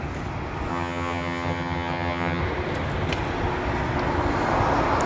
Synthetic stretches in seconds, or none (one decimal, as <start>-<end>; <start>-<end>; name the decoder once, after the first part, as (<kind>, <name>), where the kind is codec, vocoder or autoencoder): 0.7-2.4 (vocoder, HiFi-GAN)